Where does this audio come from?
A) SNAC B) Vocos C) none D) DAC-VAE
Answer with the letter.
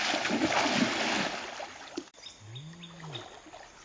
C